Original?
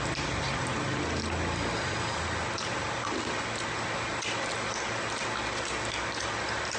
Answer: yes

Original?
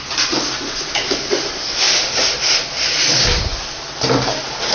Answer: yes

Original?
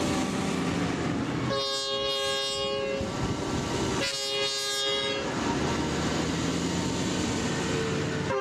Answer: yes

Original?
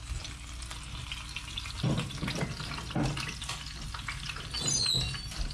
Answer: yes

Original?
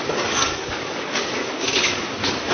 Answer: no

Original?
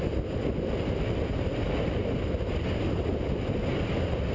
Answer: yes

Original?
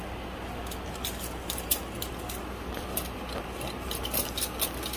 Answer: yes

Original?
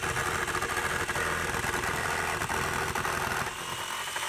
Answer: yes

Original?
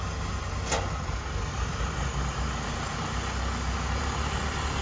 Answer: yes